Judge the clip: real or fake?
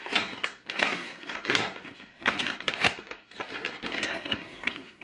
fake